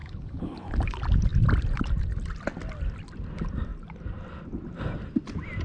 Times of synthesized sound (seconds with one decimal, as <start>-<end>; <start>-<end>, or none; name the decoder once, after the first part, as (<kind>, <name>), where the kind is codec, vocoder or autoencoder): 0.0-0.7 (codec, HILCodec)